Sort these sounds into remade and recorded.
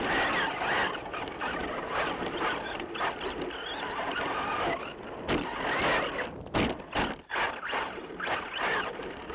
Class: recorded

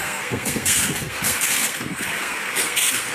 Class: remade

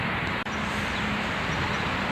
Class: recorded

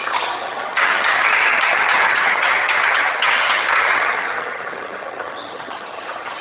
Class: remade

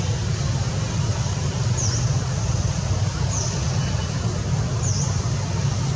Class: recorded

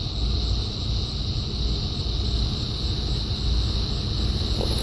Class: recorded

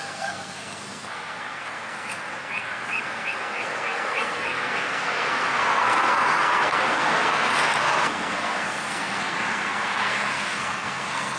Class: remade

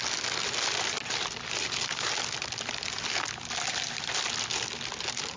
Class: recorded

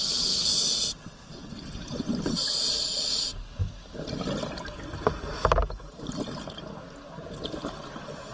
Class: recorded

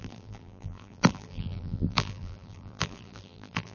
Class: remade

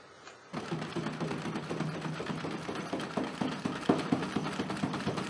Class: recorded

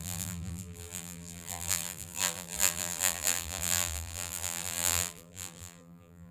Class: remade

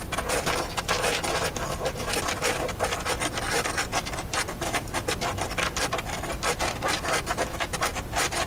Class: remade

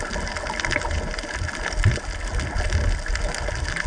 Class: recorded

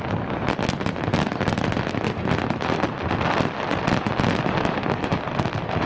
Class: recorded